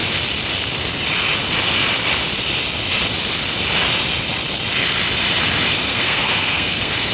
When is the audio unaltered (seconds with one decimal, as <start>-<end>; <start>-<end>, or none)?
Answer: 0.0-5.9